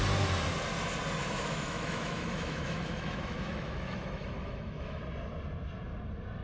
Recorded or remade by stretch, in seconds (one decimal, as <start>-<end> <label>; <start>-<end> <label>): 0.0-1.2 recorded; 1.2-5.0 remade; 5.0-6.4 recorded